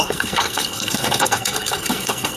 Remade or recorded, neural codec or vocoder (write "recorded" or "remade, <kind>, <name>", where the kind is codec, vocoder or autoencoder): remade, codec, SNAC